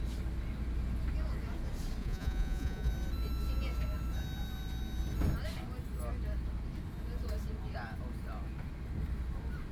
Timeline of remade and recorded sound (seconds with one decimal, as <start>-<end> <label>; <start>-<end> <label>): 0.0-2.0 recorded; 2.0-2.9 remade; 2.9-9.7 recorded